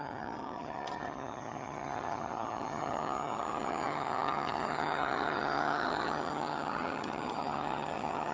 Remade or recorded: remade